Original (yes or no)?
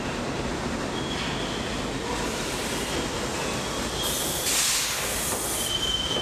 yes